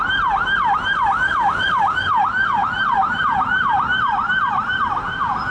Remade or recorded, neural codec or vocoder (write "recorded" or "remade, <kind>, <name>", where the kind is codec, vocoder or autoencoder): recorded